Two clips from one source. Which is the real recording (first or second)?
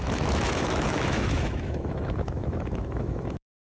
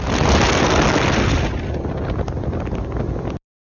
second